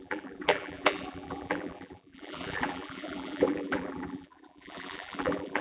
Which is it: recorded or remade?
remade